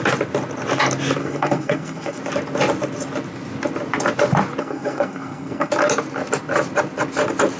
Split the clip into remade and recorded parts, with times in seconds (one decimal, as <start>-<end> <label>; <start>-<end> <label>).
0.0-1.2 recorded; 1.2-2.2 remade; 2.2-4.6 recorded; 4.6-5.7 remade; 5.7-7.6 recorded